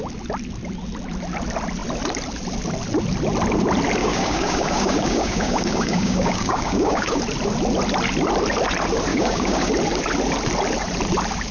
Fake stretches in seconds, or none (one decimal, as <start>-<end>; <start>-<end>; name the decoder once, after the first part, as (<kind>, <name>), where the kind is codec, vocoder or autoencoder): 4.0-7.2 (codec, DAC); 9.1-9.7